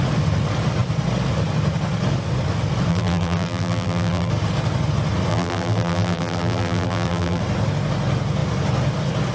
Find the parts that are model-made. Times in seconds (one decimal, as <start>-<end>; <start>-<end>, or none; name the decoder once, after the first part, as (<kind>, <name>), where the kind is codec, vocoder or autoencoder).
2.9-4.3 (vocoder, BigVGAN v2); 5.3-7.4